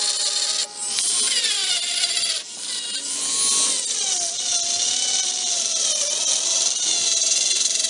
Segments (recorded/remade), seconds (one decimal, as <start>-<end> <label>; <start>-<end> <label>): 0.0-7.9 recorded